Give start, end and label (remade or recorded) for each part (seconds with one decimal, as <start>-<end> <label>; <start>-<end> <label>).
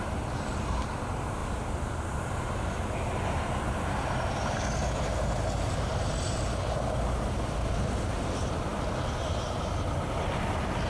0.0-1.4 recorded; 1.4-3.4 remade; 3.4-10.9 recorded